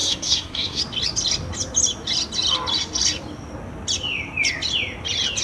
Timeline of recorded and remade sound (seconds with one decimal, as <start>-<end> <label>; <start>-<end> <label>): 0.0-0.8 remade; 0.8-5.4 recorded